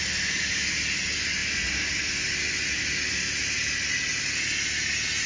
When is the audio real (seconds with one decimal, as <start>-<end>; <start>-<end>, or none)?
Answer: 0.0-5.3